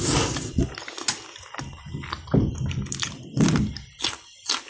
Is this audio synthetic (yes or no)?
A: no